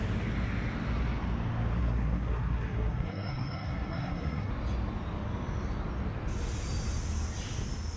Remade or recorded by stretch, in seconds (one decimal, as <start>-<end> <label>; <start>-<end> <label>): 0.0-1.8 recorded; 1.8-4.5 remade; 4.5-8.0 recorded